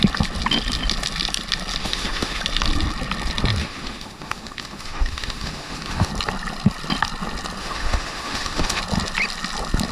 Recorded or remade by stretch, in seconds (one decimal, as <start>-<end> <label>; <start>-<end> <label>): 0.0-1.8 recorded; 1.8-2.4 remade; 2.4-3.6 recorded; 3.6-6.1 remade; 6.1-7.6 recorded; 7.6-8.8 remade; 8.8-9.9 recorded